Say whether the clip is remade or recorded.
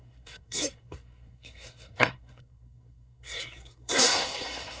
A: remade